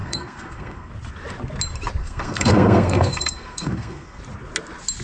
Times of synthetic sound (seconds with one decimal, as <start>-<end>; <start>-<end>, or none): 0.0-0.9; 2.0-4.2